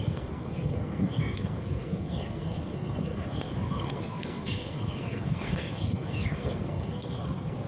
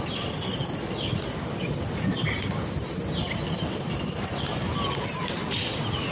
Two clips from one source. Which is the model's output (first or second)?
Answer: first